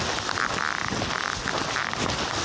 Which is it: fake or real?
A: real